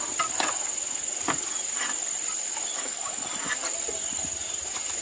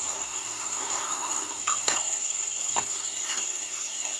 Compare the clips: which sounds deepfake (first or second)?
second